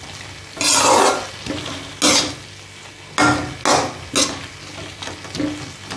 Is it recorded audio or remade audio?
recorded